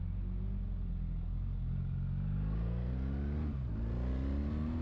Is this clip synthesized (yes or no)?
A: no